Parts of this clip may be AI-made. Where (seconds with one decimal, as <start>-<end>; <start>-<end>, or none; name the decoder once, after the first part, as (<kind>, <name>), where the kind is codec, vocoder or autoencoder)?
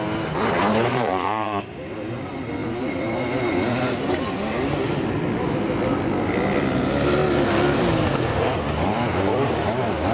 0.9-1.6 (vocoder, Vocos)